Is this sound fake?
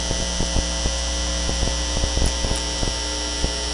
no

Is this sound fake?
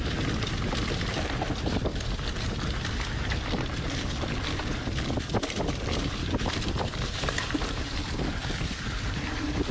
yes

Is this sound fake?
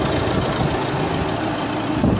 no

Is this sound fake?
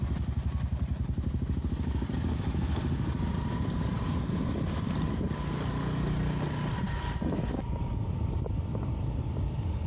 no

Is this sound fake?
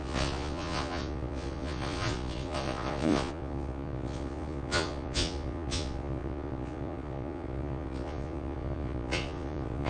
yes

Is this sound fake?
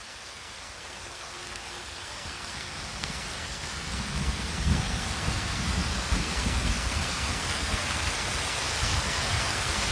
yes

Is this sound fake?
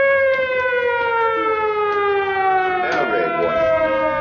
no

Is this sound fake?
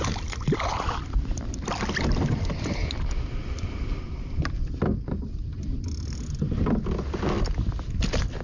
no